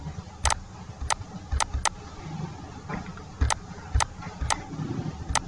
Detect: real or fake real